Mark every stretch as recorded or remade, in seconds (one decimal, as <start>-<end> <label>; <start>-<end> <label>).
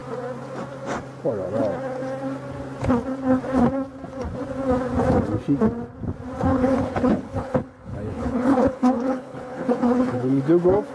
0.0-6.5 recorded; 6.5-10.4 remade; 10.4-10.9 recorded